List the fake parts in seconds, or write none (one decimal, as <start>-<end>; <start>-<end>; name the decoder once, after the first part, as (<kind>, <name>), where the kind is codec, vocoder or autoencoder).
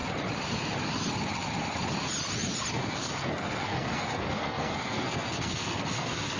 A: 2.7-6.4 (codec, SNAC)